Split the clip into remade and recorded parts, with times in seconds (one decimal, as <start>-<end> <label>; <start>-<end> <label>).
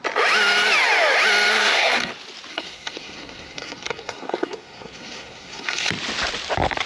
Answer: 0.0-1.5 recorded; 1.5-2.1 remade; 2.1-2.5 recorded; 2.5-5.9 remade; 5.9-6.9 recorded